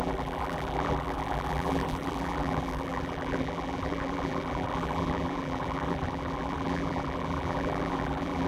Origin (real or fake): fake